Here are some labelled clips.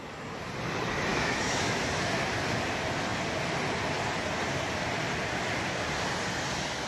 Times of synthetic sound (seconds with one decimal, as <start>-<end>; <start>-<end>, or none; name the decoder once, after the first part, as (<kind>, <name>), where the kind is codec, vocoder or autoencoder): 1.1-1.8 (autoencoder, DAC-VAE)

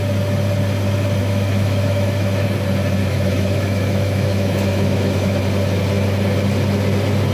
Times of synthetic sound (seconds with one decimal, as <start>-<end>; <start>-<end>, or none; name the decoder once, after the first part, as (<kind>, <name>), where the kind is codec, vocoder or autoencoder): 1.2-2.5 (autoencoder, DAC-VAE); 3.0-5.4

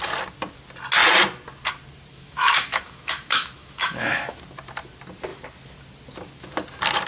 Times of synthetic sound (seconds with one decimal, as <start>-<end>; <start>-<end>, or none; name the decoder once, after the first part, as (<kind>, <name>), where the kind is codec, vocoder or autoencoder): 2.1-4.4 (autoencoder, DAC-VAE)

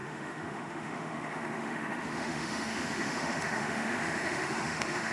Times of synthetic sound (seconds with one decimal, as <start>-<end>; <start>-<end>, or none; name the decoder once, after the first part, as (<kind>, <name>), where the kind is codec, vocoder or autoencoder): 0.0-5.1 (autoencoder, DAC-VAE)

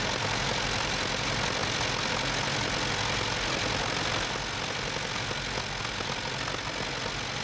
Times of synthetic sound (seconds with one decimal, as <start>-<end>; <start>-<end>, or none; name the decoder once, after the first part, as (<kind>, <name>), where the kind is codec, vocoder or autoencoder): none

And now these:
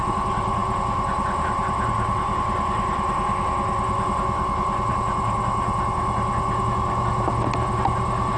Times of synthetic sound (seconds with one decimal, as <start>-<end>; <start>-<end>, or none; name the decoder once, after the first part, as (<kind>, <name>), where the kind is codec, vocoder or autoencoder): none